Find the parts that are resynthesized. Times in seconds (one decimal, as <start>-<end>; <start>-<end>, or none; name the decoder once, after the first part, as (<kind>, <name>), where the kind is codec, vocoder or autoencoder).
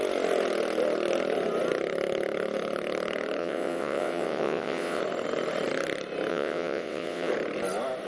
3.4-5.0 (vocoder, WaveNeXt); 6.3-7.3